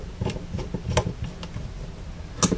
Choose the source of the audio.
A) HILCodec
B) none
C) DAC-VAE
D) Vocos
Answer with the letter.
B